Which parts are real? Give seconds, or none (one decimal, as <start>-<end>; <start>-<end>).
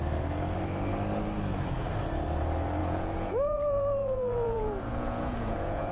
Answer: 0.0-2.8